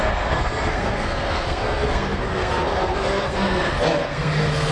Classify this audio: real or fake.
fake